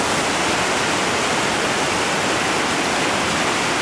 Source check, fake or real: real